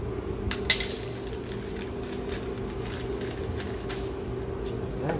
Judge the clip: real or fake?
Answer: real